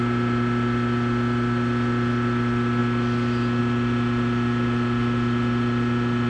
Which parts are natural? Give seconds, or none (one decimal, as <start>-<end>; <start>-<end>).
0.0-6.3